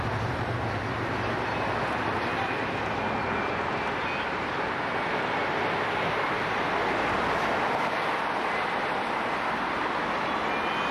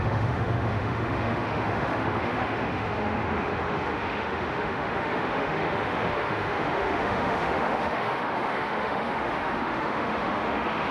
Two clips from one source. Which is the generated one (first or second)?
second